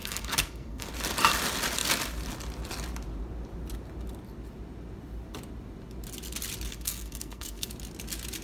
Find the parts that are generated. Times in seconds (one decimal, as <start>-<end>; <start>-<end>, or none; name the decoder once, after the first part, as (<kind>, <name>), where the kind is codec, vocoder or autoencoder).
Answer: 0.0-0.9 (codec, SNAC); 6.7-7.7